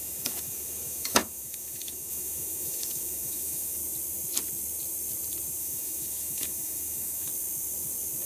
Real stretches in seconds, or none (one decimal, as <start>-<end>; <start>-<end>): 3.8-5.6; 7.3-8.3